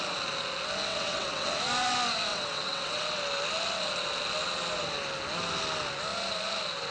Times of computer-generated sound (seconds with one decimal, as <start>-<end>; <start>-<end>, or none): 0.9-1.6; 2.3-3.2